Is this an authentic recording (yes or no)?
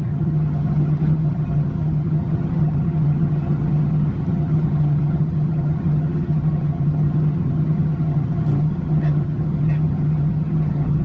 no